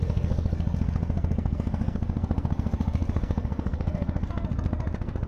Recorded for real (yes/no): no